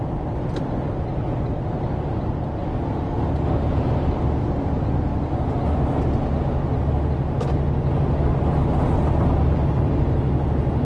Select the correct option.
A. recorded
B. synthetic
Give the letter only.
A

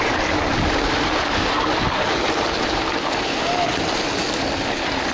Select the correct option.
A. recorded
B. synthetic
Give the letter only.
A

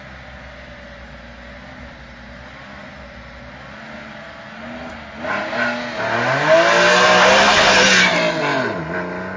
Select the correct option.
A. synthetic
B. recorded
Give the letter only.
B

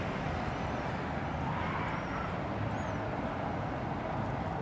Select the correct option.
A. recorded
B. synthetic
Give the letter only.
A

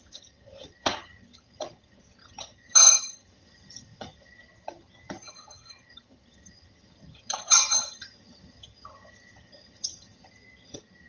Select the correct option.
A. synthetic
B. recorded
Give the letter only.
A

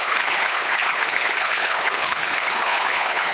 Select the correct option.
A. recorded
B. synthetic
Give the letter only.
B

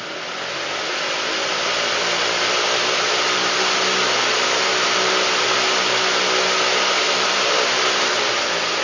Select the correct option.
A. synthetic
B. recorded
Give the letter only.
B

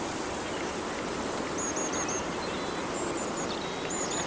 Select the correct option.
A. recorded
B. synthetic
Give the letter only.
A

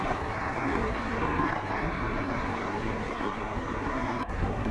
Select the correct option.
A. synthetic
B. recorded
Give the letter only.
A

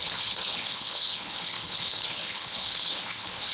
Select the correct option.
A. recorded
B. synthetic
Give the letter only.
B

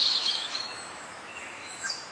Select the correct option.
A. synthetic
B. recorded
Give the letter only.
A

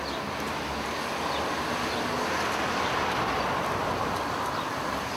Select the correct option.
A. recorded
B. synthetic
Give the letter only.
A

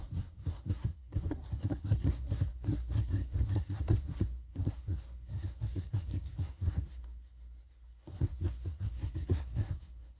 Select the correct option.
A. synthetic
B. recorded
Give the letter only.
A